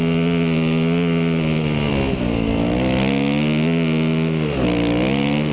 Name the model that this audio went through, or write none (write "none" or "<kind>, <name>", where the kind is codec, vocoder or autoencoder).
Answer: none